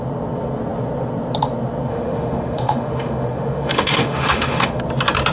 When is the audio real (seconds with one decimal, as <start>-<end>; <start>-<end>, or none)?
0.0-1.9; 4.8-5.3